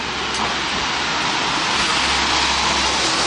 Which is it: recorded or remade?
recorded